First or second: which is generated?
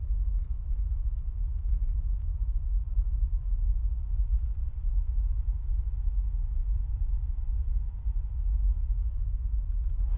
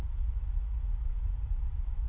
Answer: second